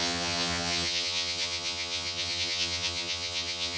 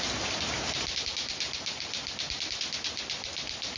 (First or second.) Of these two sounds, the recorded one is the second